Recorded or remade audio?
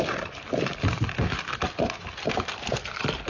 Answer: remade